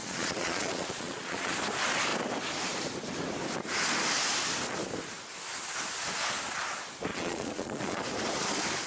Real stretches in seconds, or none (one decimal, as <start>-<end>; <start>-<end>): 1.5-7.1; 8.0-8.9